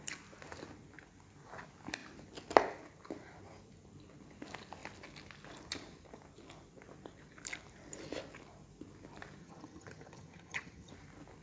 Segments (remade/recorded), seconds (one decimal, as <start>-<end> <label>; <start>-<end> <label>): 0.0-9.4 recorded; 9.4-10.9 remade; 10.9-11.4 recorded